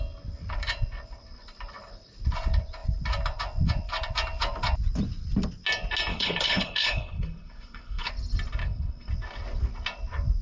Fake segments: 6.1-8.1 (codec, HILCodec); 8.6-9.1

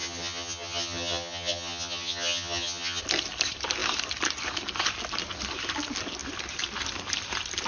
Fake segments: 0.0-3.0 (vocoder, HiFi-GAN)

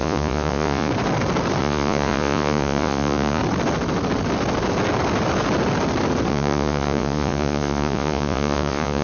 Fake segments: 0.0-0.9 (vocoder, Vocos); 1.6-3.4; 6.3-9.0

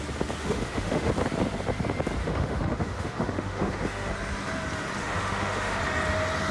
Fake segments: 0.4-1.1 (autoencoder, DAC-VAE); 2.2-4.1; 5.0-5.8